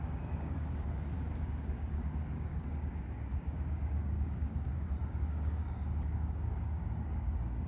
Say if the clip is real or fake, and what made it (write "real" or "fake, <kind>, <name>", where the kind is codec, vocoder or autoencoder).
fake, codec, DAC